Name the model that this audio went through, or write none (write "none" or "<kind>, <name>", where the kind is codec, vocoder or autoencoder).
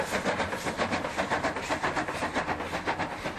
none